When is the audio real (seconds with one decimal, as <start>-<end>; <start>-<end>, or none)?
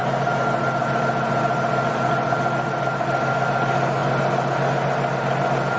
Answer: 0.0-5.8